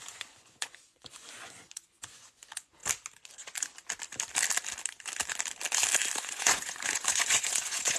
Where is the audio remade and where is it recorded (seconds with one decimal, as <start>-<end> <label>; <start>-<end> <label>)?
0.0-2.8 remade; 2.8-3.3 recorded; 3.3-3.7 remade; 3.7-6.2 recorded; 6.2-8.0 remade